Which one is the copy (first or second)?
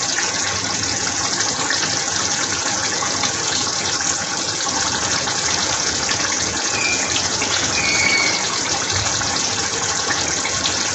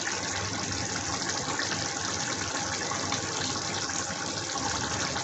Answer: first